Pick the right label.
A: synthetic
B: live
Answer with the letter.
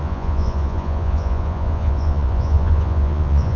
A